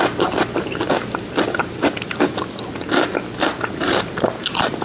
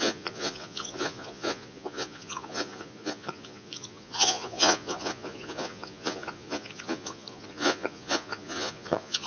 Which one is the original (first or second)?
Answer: first